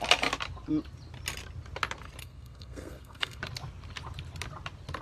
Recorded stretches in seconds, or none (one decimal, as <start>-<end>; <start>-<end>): 0.0-2.2; 3.4-5.0